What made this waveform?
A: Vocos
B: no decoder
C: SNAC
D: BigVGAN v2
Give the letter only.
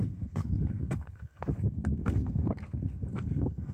C